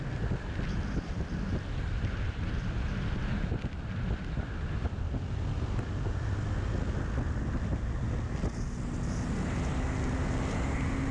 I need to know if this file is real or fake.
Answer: real